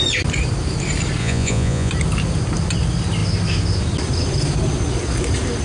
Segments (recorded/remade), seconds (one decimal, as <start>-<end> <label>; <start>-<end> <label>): 0.0-1.2 recorded; 1.2-1.9 remade; 1.9-5.6 recorded